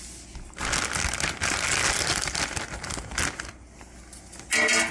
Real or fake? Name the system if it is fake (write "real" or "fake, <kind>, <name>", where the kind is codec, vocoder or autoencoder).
real